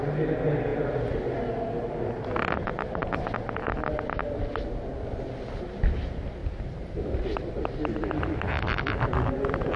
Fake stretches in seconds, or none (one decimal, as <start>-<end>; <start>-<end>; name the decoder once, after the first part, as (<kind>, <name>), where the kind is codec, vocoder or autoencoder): 6.4-8.8 (vocoder, BigVGAN v2)